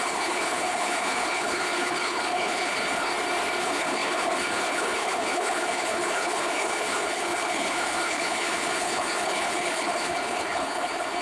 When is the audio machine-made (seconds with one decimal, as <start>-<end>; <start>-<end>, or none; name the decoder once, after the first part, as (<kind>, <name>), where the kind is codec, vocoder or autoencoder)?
0.0-3.1 (codec, HILCodec); 3.6-11.2